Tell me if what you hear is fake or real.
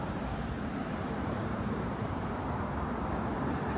fake